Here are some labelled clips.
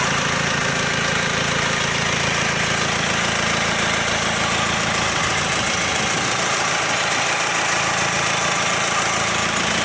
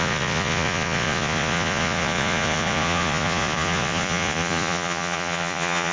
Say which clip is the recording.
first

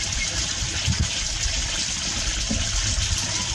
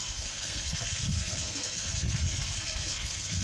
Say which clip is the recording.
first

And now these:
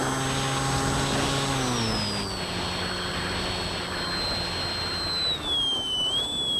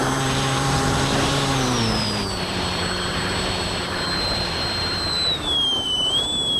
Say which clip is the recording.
first